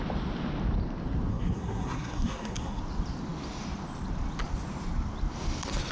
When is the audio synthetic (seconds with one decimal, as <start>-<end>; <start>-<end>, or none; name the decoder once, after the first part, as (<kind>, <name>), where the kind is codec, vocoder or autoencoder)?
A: 1.3-2.8 (codec, SNAC)